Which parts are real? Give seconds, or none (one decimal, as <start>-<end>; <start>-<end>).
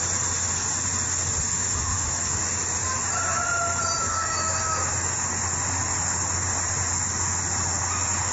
0.0-1.5; 2.3-4.0; 4.9-8.3